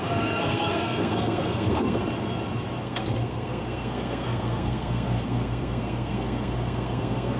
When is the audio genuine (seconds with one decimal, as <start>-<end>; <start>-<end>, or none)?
2.0-2.8